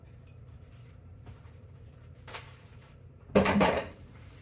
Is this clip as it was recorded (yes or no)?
no